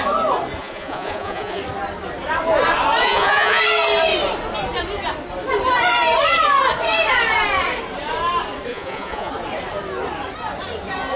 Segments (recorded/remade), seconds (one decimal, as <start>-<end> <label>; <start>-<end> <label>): 0.0-0.6 recorded; 0.6-1.6 remade; 1.6-3.0 recorded; 3.0-3.6 remade; 3.6-8.7 recorded; 8.7-9.3 remade; 9.3-11.2 recorded